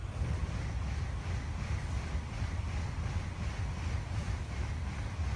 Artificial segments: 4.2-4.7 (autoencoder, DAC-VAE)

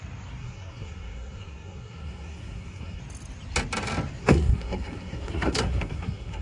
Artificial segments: 0.4-3.0 (codec, SNAC); 4.2-6.4

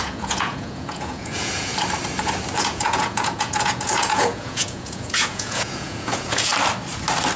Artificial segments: 0.0-1.7 (vocoder, Vocos); 2.6-6.5

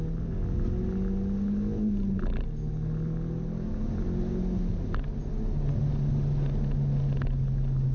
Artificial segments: none

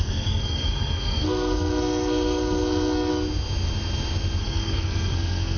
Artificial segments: 0.0-3.1 (codec, SNAC); 4.4-5.6

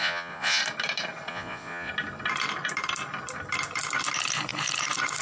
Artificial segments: 0.0-0.6 (vocoder, Vocos); 1.3-1.9

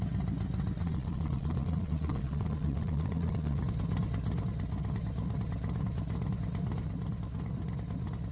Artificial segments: 0.8-3.6 (vocoder, Vocos)